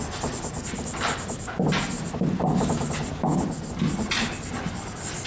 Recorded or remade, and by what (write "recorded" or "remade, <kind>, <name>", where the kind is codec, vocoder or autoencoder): recorded